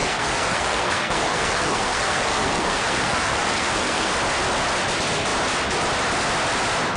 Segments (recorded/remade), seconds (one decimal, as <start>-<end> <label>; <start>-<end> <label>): 0.0-4.1 remade; 4.1-7.0 recorded